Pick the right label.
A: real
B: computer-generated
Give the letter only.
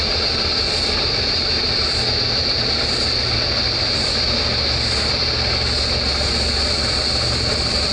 A